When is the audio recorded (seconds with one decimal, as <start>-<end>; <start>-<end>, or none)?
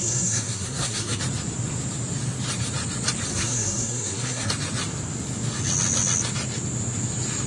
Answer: 1.2-3.3; 4.5-7.5